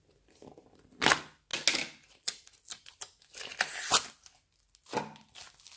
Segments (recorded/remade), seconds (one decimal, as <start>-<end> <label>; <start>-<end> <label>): 0.0-5.8 recorded